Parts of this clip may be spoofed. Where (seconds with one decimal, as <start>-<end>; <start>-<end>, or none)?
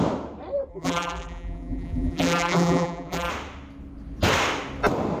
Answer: 0.7-3.3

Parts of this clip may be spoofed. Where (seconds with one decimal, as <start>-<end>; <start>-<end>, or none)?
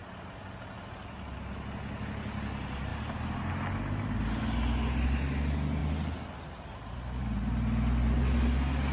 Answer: none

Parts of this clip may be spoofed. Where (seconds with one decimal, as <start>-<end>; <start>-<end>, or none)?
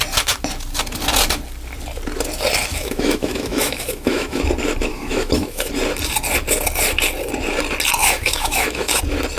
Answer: 2.7-4.4; 4.9-5.7; 8.0-9.0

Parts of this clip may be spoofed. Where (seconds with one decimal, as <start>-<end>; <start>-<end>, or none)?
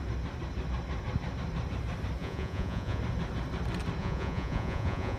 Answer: 2.2-3.0; 4.0-5.2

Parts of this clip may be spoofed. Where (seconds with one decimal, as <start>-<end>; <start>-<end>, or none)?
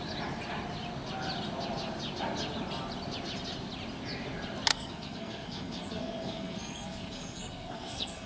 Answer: 4.7-8.3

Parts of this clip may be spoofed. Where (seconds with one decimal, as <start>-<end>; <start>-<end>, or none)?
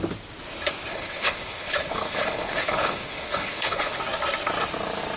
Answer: 0.9-4.0